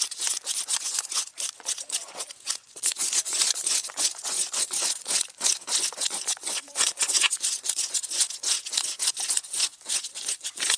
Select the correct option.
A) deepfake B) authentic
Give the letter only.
A